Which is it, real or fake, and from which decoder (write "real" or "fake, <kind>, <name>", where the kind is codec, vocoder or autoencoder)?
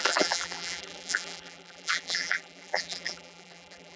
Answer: fake, vocoder, BigVGAN v2